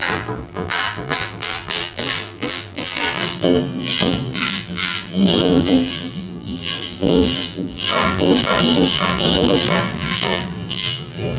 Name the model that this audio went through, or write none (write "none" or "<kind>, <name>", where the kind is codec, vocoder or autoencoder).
vocoder, BigVGAN v2